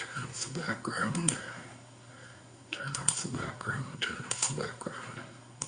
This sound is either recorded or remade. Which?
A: remade